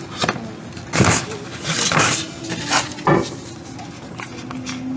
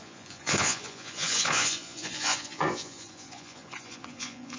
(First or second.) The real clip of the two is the first